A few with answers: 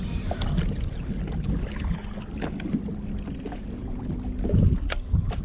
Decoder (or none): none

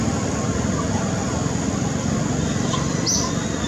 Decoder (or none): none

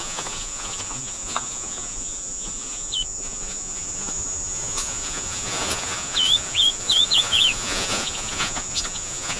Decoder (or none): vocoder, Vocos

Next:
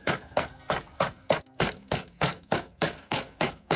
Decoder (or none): codec, SNAC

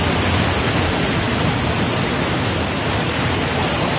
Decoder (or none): none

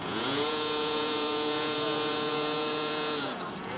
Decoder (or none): vocoder, Vocos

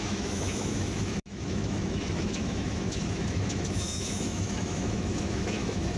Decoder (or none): autoencoder, DAC-VAE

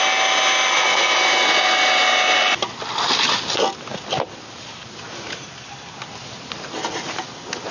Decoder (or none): none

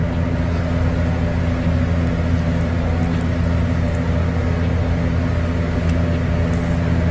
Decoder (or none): none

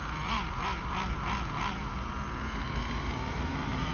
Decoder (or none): none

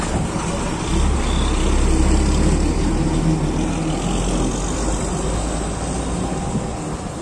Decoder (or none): none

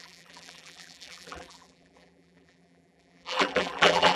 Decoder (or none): vocoder, BigVGAN v2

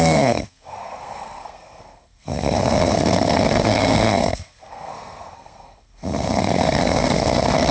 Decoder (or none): codec, SNAC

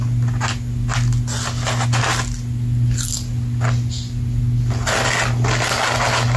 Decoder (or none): none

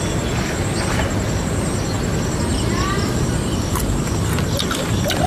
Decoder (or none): none